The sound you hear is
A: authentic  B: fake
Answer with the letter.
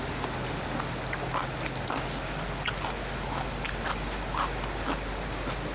A